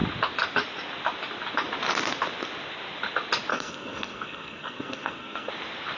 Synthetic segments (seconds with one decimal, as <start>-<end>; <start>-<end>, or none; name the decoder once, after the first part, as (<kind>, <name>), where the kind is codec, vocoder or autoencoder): 3.5-5.5 (codec, SNAC)